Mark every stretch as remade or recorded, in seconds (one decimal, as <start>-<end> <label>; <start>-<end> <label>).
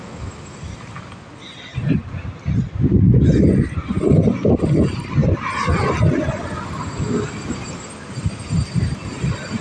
0.0-1.7 remade; 1.7-4.5 recorded; 4.5-9.6 remade